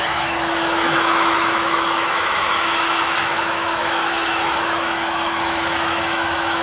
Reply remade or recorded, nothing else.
remade